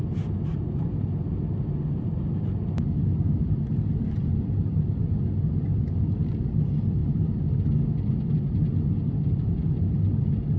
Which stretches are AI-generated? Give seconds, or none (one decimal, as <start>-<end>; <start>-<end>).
none